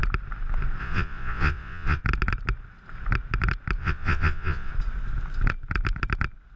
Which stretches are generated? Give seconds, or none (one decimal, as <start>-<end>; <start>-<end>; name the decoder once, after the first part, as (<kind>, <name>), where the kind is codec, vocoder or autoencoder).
0.8-2.0 (vocoder, Vocos); 3.8-4.7